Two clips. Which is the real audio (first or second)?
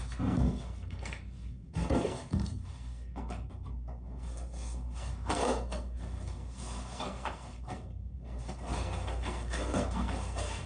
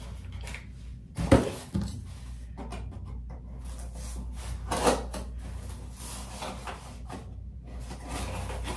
second